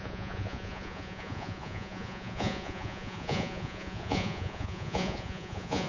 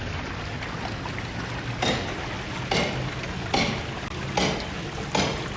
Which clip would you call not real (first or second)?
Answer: first